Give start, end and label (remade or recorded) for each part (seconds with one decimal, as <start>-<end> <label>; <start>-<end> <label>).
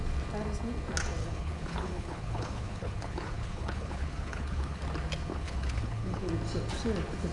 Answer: 0.0-1.2 recorded; 1.2-4.8 remade; 4.8-5.3 recorded; 5.3-6.3 remade; 6.3-7.3 recorded